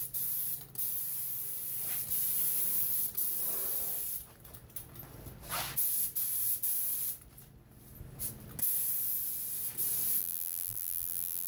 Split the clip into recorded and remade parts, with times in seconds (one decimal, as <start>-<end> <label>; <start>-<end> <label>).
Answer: 0.0-10.2 recorded; 10.2-11.5 remade